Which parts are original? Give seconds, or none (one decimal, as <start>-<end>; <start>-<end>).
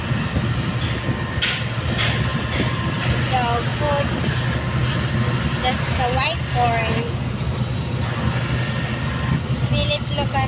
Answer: 0.0-10.5